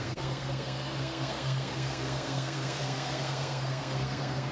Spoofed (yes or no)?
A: yes